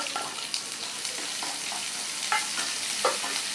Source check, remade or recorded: recorded